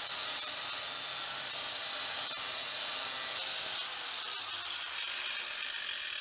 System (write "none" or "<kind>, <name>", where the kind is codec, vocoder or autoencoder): none